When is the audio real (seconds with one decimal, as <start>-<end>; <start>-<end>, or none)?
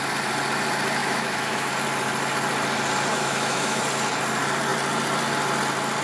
0.0-1.0; 1.7-3.1; 3.8-6.0